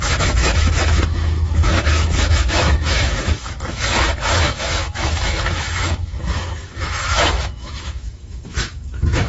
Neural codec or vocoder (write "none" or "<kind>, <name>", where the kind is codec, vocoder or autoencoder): autoencoder, DAC-VAE